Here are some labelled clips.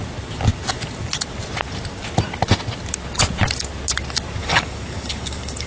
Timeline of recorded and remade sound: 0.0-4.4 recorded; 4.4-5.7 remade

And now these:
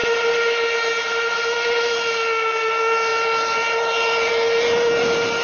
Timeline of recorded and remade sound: 0.0-5.4 recorded

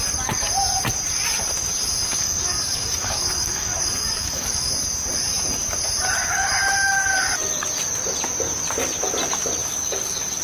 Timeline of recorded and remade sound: 0.0-1.8 recorded; 1.8-4.7 remade; 4.7-9.6 recorded; 9.6-10.4 remade

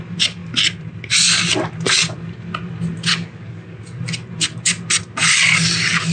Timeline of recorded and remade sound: 0.0-3.1 recorded; 3.1-4.0 remade; 4.0-6.1 recorded

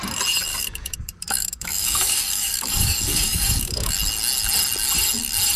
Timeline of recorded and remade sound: 0.0-0.5 recorded; 0.5-3.9 remade; 3.9-5.6 recorded